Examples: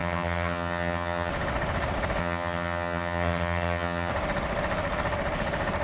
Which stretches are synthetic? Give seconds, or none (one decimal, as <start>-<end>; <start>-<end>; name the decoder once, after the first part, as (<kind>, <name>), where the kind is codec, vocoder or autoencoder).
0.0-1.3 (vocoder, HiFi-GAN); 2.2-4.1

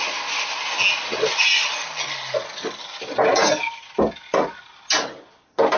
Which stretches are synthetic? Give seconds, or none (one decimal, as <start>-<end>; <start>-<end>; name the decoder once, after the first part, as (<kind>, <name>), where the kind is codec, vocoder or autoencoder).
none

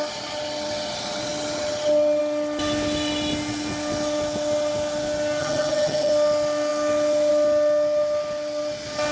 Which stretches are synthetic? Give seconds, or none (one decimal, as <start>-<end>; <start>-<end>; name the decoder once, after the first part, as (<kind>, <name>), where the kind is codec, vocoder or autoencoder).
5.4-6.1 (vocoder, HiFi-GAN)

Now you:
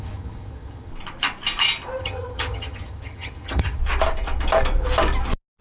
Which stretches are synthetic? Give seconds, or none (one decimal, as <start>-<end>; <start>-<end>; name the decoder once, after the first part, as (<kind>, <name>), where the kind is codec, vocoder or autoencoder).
0.0-0.9 (vocoder, HiFi-GAN); 2.0-3.8

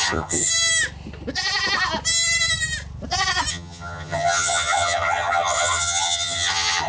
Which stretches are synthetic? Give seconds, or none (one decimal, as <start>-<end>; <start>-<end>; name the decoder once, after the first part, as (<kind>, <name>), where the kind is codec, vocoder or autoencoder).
0.0-0.5 (vocoder, HiFi-GAN); 3.5-6.9